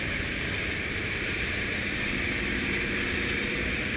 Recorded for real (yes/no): yes